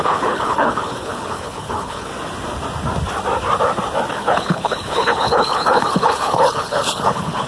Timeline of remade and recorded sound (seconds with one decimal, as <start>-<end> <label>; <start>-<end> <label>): 0.0-2.1 remade; 2.1-4.1 recorded; 4.1-7.5 remade